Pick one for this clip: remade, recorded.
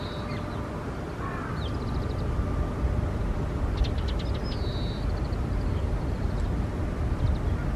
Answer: recorded